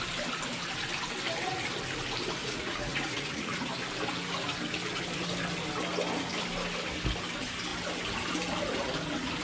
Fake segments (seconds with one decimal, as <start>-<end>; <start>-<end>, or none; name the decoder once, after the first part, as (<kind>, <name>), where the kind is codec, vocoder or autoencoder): 2.4-3.7 (vocoder, Vocos)